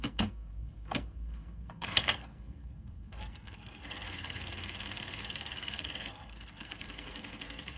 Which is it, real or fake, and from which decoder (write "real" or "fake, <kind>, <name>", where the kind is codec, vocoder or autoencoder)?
fake, codec, SNAC